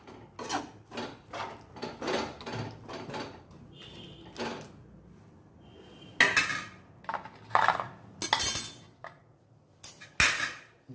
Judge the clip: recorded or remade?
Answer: recorded